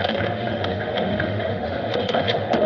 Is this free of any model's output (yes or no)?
no